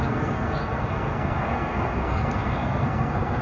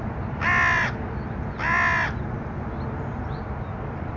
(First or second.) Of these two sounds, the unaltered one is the second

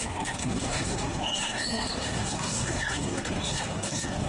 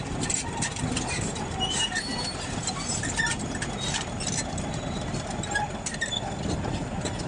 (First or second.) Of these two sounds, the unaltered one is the second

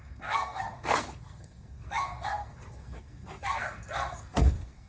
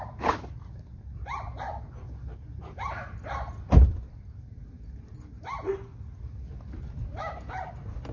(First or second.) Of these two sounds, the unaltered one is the second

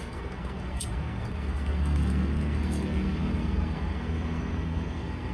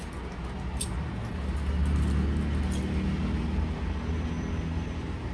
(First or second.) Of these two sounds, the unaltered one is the second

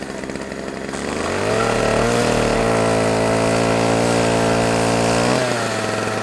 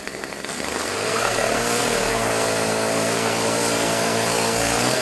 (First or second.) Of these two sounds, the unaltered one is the first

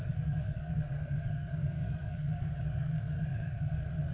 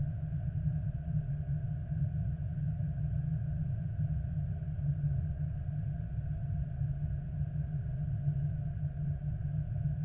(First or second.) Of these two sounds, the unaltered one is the second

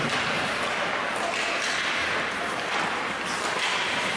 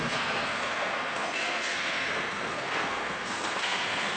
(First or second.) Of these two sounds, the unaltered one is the first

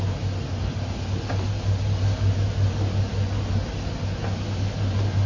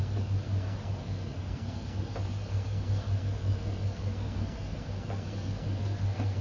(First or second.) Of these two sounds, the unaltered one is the first